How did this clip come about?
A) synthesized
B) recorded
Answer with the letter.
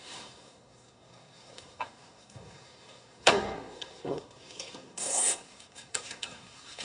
A